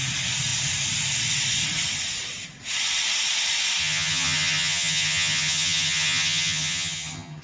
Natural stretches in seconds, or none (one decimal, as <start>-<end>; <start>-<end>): 0.0-3.8